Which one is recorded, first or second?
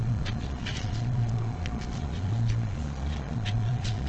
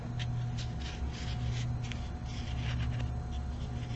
second